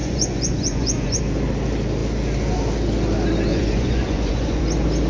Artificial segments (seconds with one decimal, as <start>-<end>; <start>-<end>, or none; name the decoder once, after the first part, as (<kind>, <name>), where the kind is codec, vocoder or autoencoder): 0.0-1.2 (vocoder, Vocos); 3.5-4.6